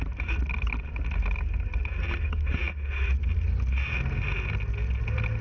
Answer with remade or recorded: recorded